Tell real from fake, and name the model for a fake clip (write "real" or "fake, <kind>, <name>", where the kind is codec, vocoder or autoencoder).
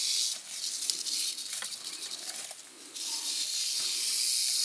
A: real